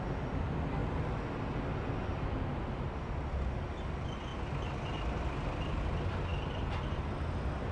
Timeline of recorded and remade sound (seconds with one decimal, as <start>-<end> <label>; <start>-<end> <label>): 0.0-7.7 recorded